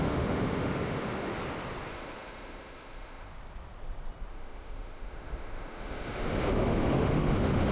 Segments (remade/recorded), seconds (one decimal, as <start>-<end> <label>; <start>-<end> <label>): 0.0-1.3 remade; 1.3-1.9 recorded; 1.9-3.3 remade; 3.3-4.3 recorded; 4.3-7.7 remade